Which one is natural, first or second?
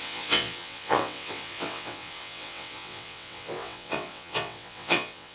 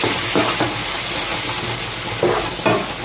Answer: second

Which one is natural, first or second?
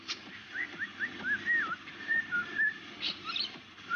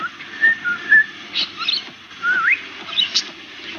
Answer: second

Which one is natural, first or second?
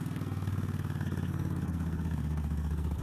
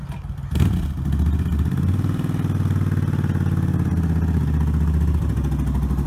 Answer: second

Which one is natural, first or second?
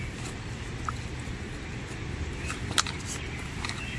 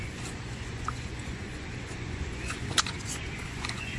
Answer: first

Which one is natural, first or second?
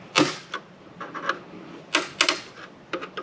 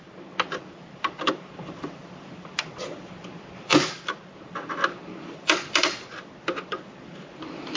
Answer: first